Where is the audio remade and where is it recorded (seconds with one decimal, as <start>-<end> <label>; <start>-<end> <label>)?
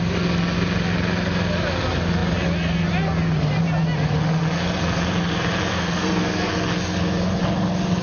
0.0-5.7 recorded; 5.7-6.5 remade; 6.5-8.0 recorded